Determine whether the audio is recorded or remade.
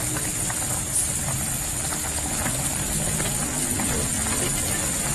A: recorded